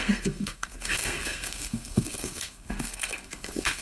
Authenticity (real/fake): fake